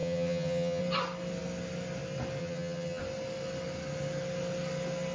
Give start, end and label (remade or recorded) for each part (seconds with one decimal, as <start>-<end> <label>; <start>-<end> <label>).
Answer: 0.0-0.8 remade; 0.8-2.4 recorded; 2.4-3.0 remade; 3.0-5.1 recorded